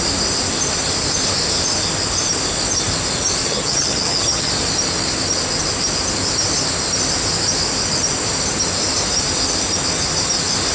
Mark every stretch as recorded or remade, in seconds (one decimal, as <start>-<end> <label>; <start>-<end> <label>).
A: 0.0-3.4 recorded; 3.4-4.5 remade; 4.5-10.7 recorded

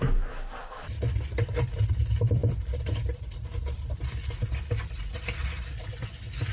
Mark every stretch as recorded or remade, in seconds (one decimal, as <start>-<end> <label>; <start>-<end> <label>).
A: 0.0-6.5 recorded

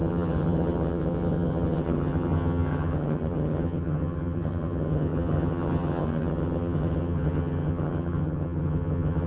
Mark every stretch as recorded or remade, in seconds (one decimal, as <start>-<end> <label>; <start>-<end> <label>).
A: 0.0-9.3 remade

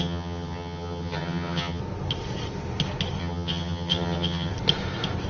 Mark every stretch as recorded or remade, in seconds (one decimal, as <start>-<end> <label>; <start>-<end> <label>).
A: 0.0-1.8 remade; 1.8-3.2 recorded; 3.2-4.5 remade; 4.5-5.3 recorded

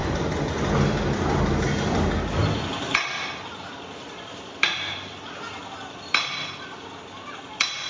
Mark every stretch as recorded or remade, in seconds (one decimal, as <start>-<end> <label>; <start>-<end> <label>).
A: 0.0-7.9 recorded

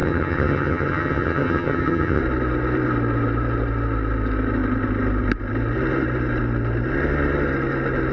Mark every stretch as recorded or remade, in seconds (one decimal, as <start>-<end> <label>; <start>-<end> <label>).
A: 0.0-2.2 remade; 2.2-8.1 recorded

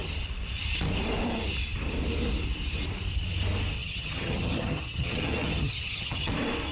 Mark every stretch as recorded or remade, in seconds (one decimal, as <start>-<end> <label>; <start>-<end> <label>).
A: 0.0-3.8 recorded; 3.8-6.3 remade; 6.3-6.7 recorded

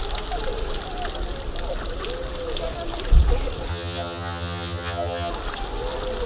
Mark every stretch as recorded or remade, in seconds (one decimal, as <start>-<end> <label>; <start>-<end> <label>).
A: 0.0-3.7 recorded; 3.7-5.3 remade; 5.3-6.3 recorded